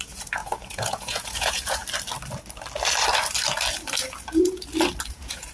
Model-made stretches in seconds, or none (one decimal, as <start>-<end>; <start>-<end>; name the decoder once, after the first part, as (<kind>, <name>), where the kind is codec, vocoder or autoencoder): 0.0-1.8 (vocoder, Vocos); 5.1-5.5